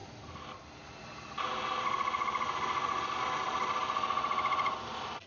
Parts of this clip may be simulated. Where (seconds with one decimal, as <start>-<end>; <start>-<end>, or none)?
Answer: none